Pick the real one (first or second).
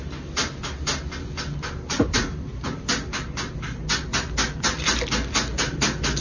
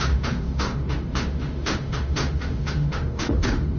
first